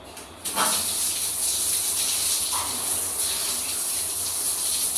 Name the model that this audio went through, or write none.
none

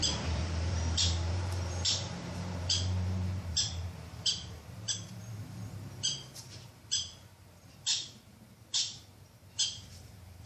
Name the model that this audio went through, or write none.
vocoder, BigVGAN v2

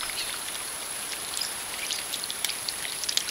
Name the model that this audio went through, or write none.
vocoder, BigVGAN v2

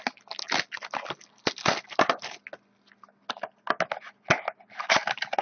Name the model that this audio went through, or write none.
none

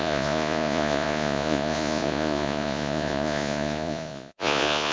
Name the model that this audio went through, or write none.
vocoder, Vocos